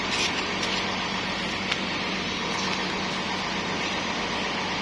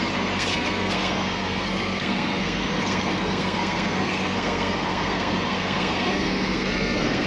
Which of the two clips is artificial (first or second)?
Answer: second